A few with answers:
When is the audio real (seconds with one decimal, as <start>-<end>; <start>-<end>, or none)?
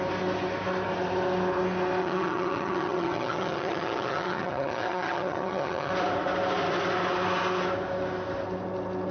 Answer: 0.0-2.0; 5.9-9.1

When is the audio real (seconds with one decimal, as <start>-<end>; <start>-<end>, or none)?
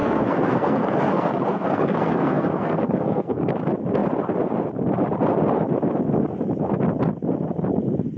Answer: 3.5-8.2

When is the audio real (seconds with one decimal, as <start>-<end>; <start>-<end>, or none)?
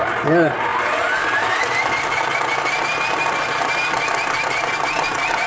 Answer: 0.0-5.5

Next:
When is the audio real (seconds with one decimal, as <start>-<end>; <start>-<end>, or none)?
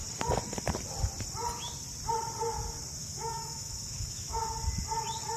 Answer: 0.0-3.0; 4.4-5.4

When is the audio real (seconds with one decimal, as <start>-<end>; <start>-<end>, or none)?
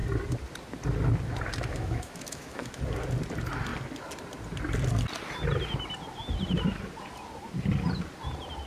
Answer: 0.0-1.7; 2.8-8.7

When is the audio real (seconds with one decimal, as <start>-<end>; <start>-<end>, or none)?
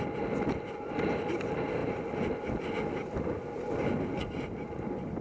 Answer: 0.0-5.2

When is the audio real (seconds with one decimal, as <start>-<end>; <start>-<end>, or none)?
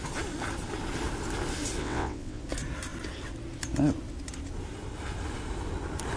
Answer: 0.0-1.8; 2.4-6.2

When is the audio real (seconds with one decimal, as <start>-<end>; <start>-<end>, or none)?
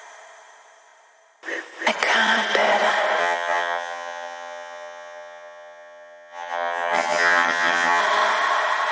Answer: 0.0-3.2; 8.0-8.9